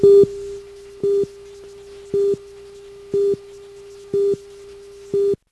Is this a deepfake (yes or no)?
no